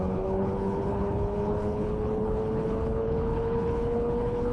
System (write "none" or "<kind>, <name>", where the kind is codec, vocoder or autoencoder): codec, HILCodec